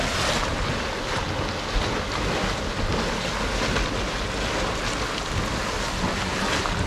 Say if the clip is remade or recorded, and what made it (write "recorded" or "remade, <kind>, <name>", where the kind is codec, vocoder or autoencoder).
recorded